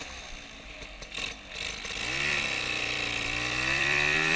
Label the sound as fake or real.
fake